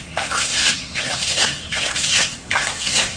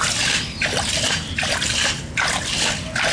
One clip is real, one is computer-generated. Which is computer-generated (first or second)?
first